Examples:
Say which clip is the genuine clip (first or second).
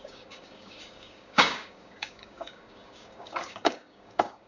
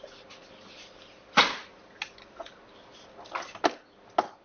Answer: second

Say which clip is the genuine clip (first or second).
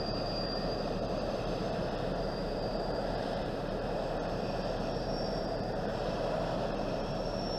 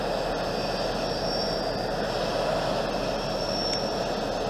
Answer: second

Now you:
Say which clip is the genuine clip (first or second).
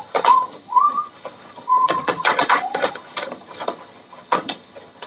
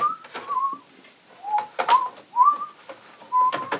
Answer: second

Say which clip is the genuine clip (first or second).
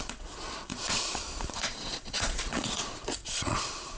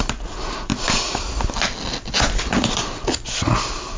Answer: second